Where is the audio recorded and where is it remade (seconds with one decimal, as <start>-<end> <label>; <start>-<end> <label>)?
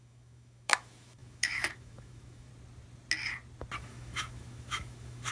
0.0-2.5 remade; 2.5-3.8 recorded; 3.8-5.3 remade